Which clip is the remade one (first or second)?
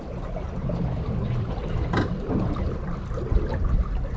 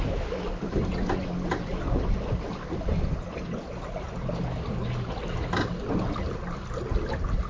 first